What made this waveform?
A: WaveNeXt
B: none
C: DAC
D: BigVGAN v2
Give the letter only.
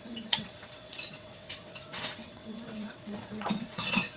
A